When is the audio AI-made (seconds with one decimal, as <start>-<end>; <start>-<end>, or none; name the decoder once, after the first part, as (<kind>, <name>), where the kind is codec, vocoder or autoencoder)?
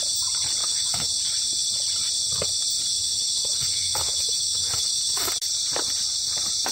0.6-1.1 (autoencoder, DAC-VAE); 2.9-5.3